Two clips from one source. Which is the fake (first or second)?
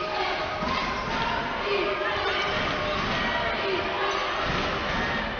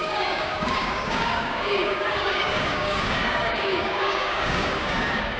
second